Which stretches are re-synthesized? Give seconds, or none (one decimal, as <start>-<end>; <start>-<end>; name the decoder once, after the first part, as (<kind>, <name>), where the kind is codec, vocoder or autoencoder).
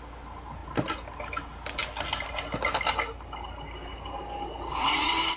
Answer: none